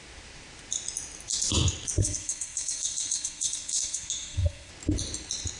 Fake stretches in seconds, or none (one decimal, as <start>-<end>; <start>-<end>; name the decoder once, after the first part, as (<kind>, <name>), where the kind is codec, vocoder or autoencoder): 2.0-4.7 (codec, SNAC)